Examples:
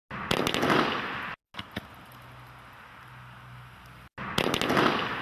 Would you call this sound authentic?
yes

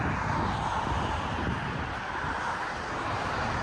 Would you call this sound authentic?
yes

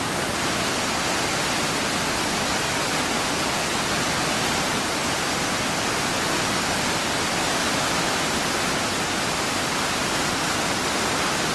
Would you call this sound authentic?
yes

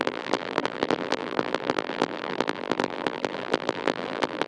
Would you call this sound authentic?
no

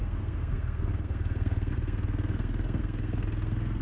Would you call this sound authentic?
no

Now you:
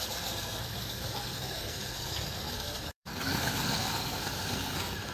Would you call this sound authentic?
no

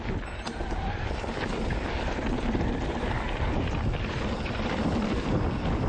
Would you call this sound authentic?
yes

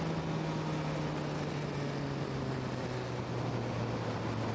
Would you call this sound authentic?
yes